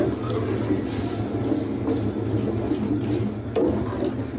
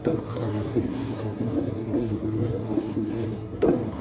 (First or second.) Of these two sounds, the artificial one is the second